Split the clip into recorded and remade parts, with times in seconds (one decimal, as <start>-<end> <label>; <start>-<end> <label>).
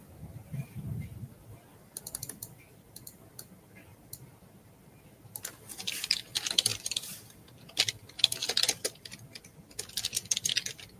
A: 0.0-6.7 recorded; 6.7-7.8 remade; 7.8-11.0 recorded